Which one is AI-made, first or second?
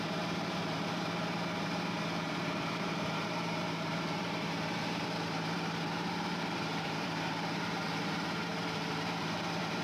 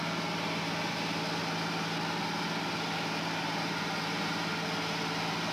first